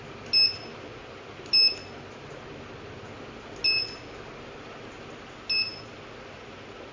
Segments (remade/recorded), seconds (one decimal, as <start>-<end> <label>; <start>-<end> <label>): 0.0-6.9 recorded